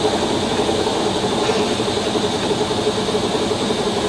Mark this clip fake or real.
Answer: real